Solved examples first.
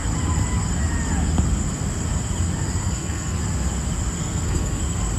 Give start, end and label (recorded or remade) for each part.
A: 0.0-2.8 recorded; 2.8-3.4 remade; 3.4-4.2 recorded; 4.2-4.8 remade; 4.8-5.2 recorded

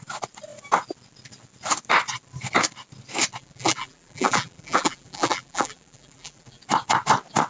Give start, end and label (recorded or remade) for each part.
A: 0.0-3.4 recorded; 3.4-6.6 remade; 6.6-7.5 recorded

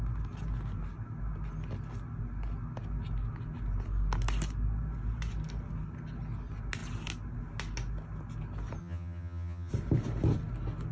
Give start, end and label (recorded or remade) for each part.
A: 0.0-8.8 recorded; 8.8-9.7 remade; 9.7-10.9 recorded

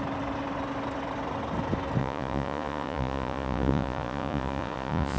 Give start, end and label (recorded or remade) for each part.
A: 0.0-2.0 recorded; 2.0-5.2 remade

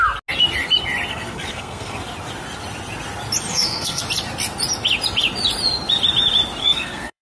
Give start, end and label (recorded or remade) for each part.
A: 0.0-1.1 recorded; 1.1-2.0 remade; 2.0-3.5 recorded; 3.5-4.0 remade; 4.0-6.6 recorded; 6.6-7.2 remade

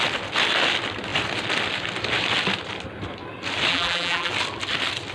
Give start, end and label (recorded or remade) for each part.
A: 0.0-3.7 recorded; 3.7-4.3 remade; 4.3-5.1 recorded